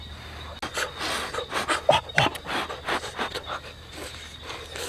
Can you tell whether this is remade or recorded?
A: recorded